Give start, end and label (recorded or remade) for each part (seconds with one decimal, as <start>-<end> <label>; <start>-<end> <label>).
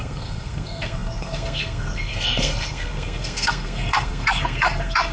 0.0-5.1 remade